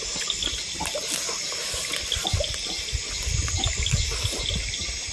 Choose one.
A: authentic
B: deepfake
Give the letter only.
A